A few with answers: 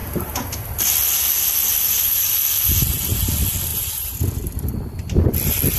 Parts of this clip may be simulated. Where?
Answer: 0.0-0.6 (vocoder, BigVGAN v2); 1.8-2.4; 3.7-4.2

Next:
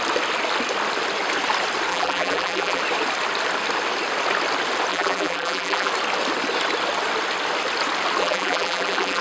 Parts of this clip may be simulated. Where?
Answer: 1.9-2.8 (vocoder, BigVGAN v2); 4.9-5.9; 8.2-9.2

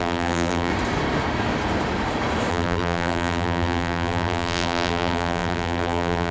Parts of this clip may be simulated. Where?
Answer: 0.0-0.7 (vocoder, BigVGAN v2); 2.5-6.3

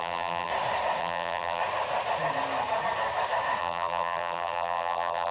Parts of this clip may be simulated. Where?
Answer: 0.0-0.5 (vocoder, BigVGAN v2); 1.0-1.6; 3.6-5.3

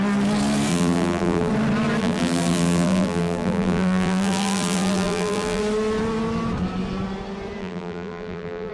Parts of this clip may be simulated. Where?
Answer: 0.7-1.5 (vocoder, BigVGAN v2); 2.0-5.6; 7.6-8.7

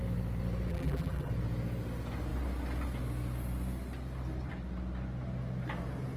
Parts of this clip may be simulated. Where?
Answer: 0.7-1.3 (vocoder, BigVGAN v2)

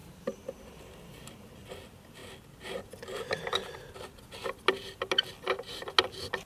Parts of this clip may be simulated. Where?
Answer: 0.0-0.5 (vocoder, BigVGAN v2)